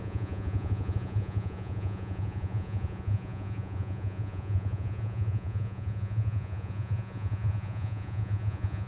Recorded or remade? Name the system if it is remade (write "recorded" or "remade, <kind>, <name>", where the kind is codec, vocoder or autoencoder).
remade, vocoder, Vocos